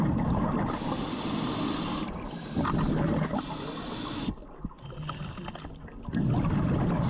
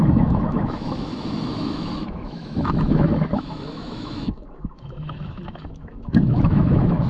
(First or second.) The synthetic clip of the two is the second